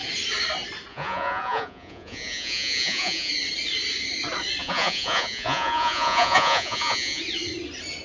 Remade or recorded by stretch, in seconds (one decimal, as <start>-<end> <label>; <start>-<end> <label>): 0.0-0.9 recorded; 0.9-3.3 remade; 3.3-4.6 recorded; 4.6-7.2 remade; 7.2-8.0 recorded